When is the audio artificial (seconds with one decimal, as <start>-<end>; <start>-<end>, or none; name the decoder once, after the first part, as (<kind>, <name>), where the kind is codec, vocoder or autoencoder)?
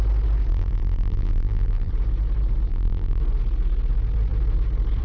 0.5-1.9 (vocoder, BigVGAN v2); 2.7-3.2